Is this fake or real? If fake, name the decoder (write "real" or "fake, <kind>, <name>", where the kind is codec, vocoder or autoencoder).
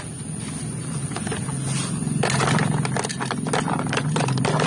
real